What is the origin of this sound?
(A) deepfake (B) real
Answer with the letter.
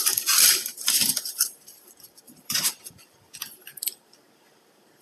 A